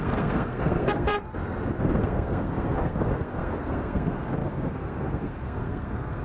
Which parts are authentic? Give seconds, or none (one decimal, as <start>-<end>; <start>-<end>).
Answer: 1.1-1.8